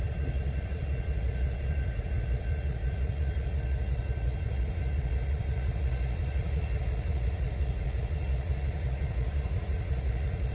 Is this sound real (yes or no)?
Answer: no